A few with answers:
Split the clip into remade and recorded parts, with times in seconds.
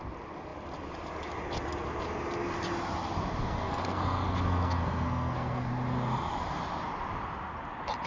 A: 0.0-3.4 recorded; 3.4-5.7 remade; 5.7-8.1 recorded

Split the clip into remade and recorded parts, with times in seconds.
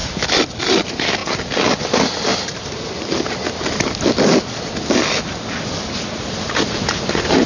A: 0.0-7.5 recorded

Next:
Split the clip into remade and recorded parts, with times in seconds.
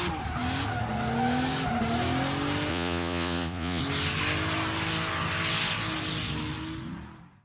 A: 0.0-2.7 recorded; 2.7-3.8 remade; 3.8-7.4 recorded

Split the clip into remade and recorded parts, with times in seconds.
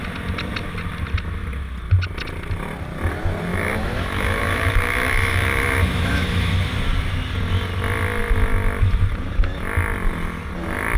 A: 0.0-3.5 recorded; 3.5-6.5 remade; 6.5-11.0 recorded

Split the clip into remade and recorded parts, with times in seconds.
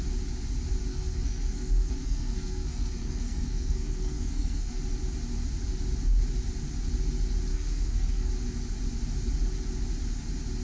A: 0.0-0.9 recorded; 0.9-4.8 remade; 4.8-7.5 recorded; 7.5-8.3 remade; 8.3-10.6 recorded